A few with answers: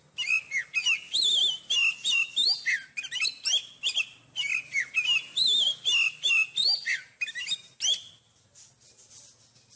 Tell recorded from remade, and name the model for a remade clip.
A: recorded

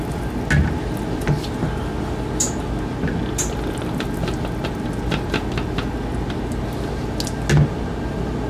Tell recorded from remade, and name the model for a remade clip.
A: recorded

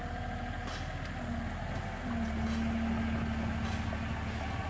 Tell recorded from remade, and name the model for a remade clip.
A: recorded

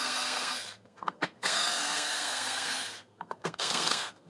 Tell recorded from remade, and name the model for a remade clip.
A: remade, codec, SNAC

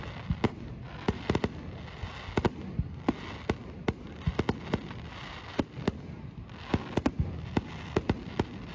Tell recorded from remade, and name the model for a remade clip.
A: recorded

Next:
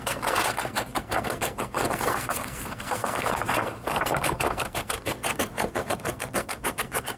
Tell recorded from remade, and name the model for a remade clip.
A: remade, codec, SNAC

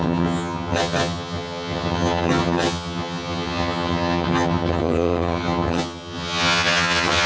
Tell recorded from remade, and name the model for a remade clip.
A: remade, vocoder, HiFi-GAN